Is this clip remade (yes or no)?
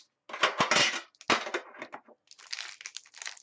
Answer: no